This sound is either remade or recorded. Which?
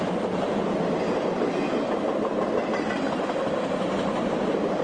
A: recorded